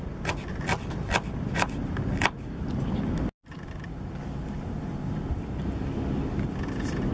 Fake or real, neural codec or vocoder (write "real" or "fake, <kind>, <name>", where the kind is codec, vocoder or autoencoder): real